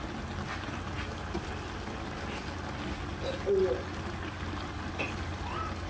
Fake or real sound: real